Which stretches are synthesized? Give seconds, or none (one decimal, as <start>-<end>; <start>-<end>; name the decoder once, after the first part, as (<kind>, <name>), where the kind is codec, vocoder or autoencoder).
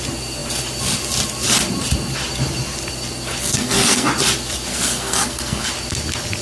3.4-4.1 (codec, SNAC); 4.7-5.7